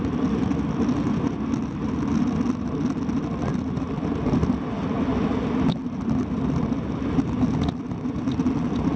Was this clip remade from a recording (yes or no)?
no